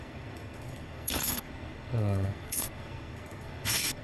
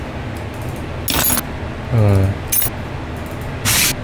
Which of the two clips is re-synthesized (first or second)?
first